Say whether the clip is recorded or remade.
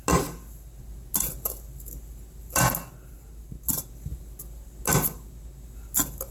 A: recorded